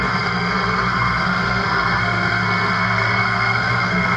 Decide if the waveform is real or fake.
fake